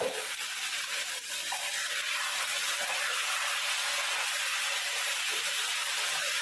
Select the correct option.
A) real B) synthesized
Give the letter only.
A